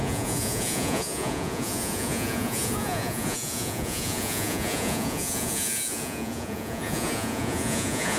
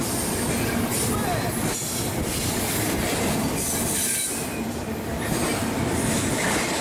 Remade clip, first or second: first